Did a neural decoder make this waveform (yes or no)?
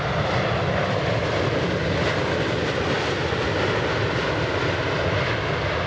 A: no